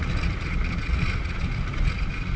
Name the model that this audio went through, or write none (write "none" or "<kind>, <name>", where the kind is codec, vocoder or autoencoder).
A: vocoder, Vocos